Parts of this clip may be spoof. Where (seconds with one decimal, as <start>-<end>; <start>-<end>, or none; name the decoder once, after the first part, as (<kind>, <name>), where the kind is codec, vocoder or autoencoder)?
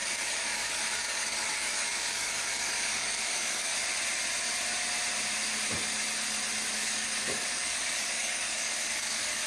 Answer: 0.0-3.7 (codec, DAC); 6.7-9.5